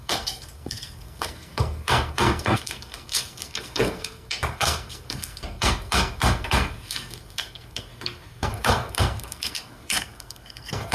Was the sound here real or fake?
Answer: fake